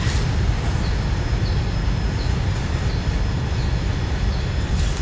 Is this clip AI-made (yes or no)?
no